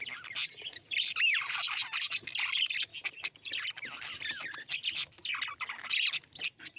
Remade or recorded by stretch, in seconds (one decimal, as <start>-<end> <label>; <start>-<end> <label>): 0.0-6.8 recorded